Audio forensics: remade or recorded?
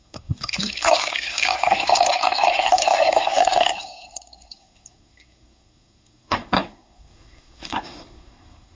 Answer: remade